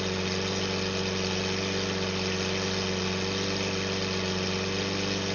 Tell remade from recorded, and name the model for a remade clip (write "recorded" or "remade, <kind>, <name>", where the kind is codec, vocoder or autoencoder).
recorded